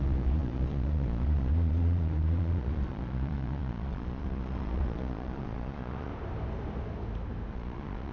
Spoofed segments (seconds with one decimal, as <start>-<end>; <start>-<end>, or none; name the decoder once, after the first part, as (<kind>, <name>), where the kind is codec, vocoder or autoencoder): 0.0-6.1 (vocoder, Vocos); 7.5-8.1